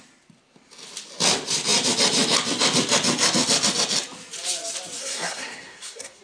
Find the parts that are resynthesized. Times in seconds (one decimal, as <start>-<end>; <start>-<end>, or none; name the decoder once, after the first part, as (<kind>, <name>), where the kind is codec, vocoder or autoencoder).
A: 5.0-6.2 (codec, SNAC)